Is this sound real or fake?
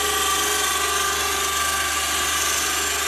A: real